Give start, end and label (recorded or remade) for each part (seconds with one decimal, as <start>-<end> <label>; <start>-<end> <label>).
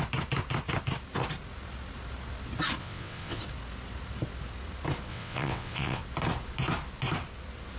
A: 0.0-2.8 recorded; 2.8-3.4 remade; 3.4-5.1 recorded; 5.1-6.0 remade; 6.0-7.8 recorded